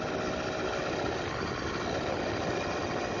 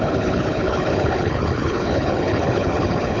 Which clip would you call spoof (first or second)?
second